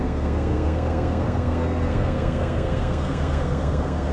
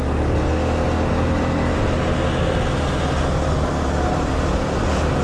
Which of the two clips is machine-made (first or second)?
first